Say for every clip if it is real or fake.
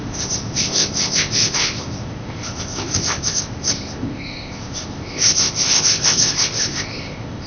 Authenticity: fake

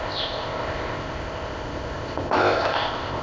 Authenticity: fake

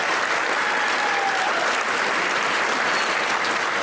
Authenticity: real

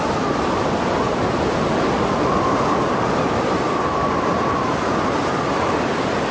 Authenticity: real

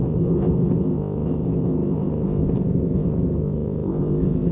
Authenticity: fake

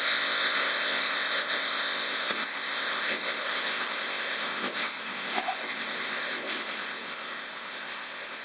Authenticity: fake